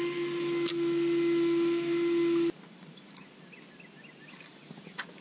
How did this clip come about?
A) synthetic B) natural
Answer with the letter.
B